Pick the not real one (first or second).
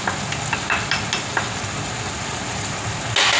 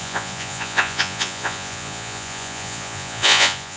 second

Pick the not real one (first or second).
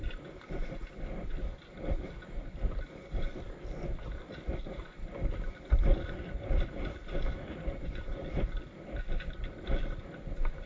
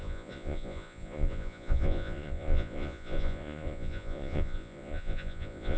second